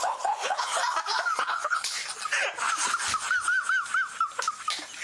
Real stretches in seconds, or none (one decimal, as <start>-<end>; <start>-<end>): 0.7-1.4; 2.0-5.0